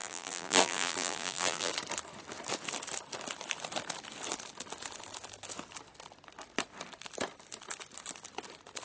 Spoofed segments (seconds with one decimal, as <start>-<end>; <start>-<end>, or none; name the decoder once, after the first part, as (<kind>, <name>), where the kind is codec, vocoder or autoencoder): 0.0-1.7 (vocoder, BigVGAN v2)